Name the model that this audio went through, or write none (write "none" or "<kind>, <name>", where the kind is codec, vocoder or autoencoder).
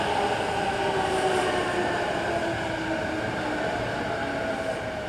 none